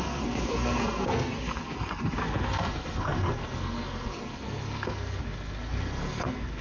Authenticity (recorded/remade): remade